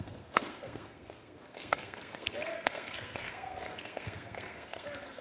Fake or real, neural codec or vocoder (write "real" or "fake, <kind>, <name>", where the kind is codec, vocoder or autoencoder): fake, codec, SNAC